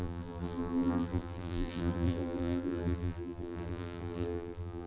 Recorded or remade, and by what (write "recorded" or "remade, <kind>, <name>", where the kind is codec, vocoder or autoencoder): remade, vocoder, BigVGAN v2